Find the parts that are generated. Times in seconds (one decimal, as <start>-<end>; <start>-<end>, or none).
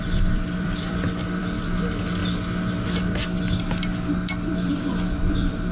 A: 0.0-2.2; 4.7-5.7